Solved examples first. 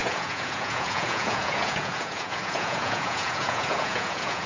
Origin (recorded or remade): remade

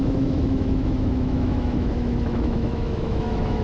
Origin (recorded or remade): remade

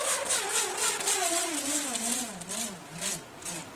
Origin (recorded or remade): recorded